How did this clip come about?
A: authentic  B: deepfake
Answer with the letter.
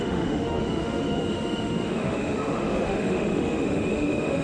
B